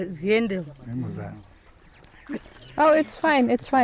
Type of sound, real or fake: real